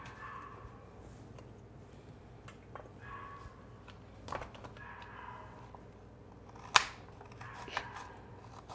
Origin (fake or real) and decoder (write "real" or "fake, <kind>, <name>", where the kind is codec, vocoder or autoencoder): real